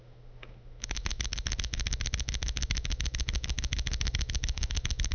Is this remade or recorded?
remade